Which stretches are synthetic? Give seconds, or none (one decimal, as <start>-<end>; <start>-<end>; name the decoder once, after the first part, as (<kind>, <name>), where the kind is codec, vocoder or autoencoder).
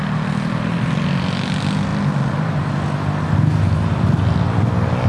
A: none